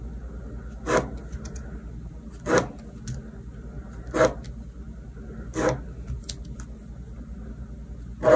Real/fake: real